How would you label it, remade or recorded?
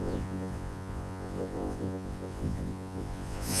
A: remade